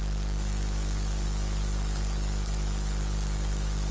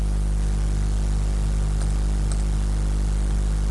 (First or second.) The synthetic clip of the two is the first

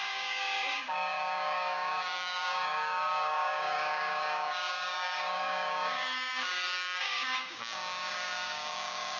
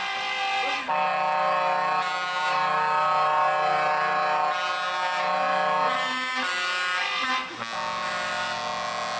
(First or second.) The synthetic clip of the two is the first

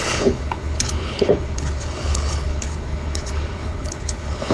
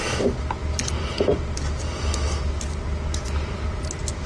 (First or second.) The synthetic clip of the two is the first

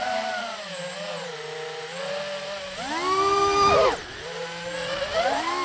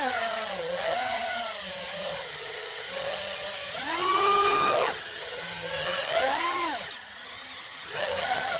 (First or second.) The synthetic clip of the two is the second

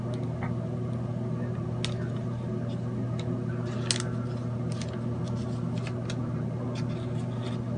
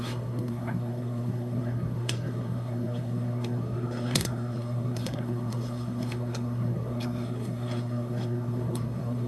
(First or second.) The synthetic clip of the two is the second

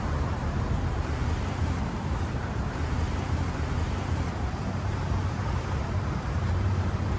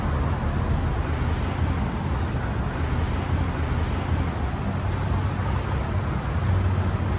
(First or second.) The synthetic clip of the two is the first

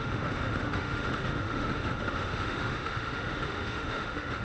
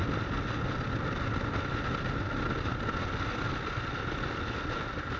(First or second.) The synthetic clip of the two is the first